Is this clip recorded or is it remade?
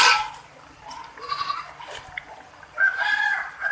remade